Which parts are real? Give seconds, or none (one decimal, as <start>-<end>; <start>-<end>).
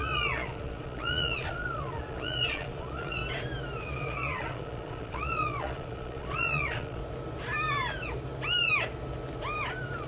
3.2-3.8; 7.0-10.1